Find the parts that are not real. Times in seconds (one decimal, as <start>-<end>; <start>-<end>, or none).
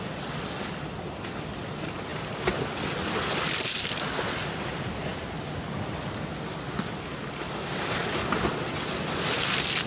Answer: none